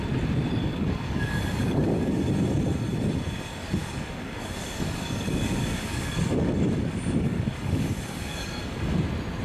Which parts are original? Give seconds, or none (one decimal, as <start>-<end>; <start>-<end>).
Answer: 0.0-0.6; 2.3-3.8; 9.0-9.4

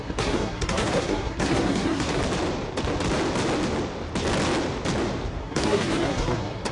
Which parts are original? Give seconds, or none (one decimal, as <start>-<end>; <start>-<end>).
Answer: 2.2-5.4

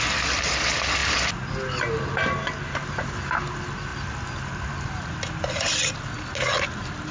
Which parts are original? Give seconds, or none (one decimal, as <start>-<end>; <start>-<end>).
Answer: 0.0-7.1

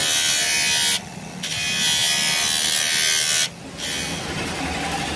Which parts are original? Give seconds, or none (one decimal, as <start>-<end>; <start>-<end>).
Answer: 0.0-5.2

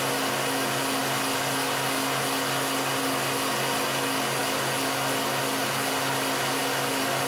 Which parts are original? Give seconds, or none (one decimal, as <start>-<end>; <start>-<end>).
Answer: 0.0-7.3

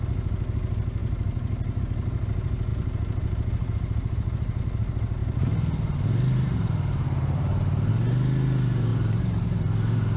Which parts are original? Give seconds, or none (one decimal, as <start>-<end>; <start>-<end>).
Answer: 0.0-2.7; 4.6-5.2; 7.9-8.9

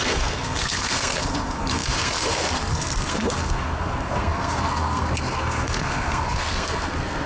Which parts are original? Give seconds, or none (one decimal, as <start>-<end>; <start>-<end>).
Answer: none

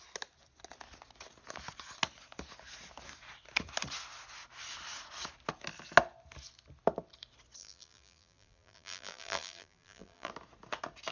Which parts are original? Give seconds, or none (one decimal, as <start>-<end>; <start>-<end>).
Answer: 0.0-7.6; 10.3-11.1